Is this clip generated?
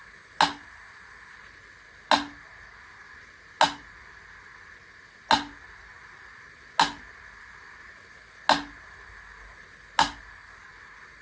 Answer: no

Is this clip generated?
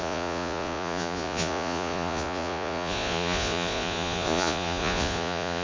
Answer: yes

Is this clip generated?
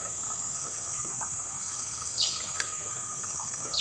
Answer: yes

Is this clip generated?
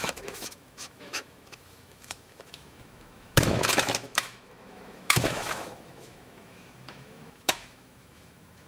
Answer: yes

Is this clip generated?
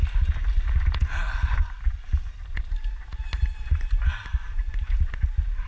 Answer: no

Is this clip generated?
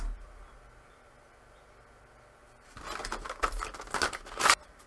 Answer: no